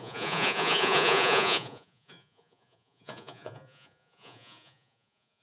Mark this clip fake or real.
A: fake